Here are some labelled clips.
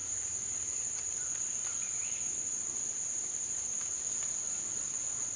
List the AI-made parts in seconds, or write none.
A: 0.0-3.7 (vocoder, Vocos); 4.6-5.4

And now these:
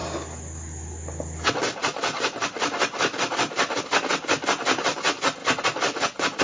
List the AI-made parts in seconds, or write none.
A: none

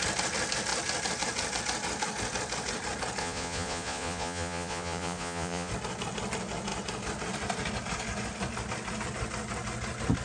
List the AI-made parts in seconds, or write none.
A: 3.2-5.7 (vocoder, Vocos)

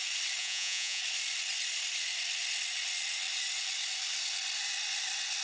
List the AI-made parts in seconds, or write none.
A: 0.4-1.0 (vocoder, Vocos)